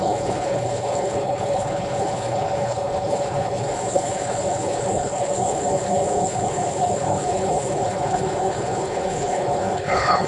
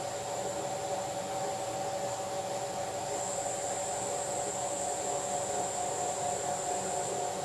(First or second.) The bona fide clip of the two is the second